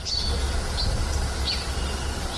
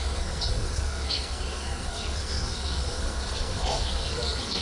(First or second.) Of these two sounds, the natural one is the first